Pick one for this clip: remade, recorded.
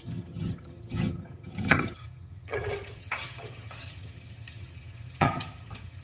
remade